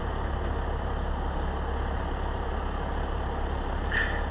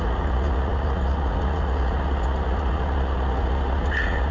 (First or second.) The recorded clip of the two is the first